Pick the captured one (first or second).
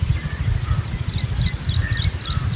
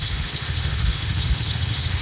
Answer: first